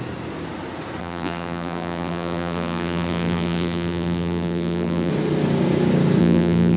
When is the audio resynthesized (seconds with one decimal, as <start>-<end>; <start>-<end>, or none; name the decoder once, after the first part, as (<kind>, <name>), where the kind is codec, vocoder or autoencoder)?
1.0-5.1 (vocoder, BigVGAN v2); 6.2-6.8